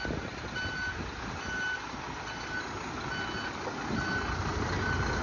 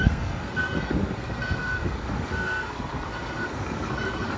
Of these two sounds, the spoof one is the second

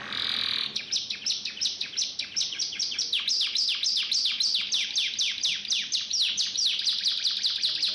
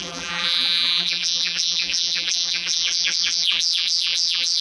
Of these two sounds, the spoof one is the second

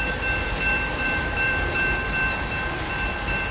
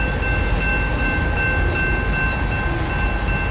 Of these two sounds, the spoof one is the first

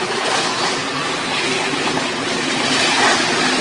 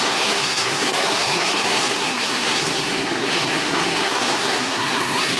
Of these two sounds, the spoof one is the second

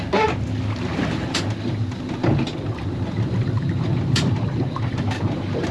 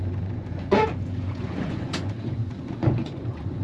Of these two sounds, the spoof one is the second